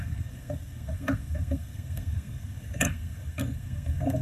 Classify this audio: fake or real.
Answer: fake